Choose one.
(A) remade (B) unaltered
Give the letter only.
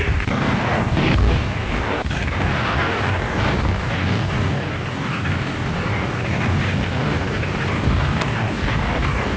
A